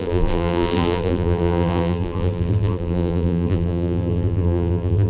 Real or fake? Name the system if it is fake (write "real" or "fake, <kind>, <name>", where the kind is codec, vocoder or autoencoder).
fake, vocoder, BigVGAN v2